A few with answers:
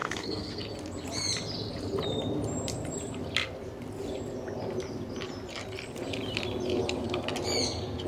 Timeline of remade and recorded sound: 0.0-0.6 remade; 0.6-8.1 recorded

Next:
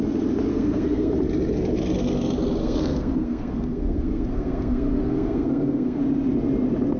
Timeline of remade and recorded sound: 0.0-0.5 recorded; 0.5-1.1 remade; 1.1-2.6 recorded; 2.6-6.0 remade; 6.0-7.0 recorded

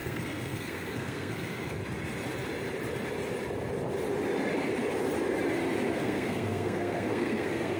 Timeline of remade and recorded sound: 0.0-1.8 remade; 1.8-5.9 recorded; 5.9-7.8 remade

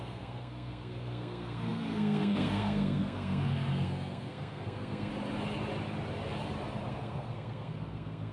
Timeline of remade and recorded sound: 0.0-5.1 remade; 5.1-6.9 recorded; 6.9-8.3 remade

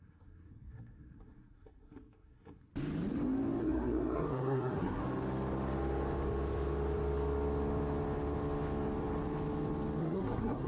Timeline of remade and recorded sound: 0.0-2.7 remade; 2.7-3.6 recorded; 3.6-5.0 remade; 5.0-10.0 recorded; 10.0-10.7 remade

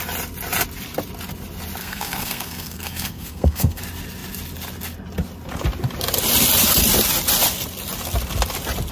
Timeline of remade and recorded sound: 0.0-1.8 recorded; 1.8-3.8 remade; 3.8-8.9 recorded

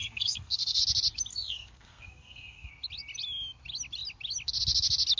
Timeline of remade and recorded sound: 0.0-0.8 remade; 0.8-1.3 recorded; 1.3-2.7 remade; 2.7-5.2 recorded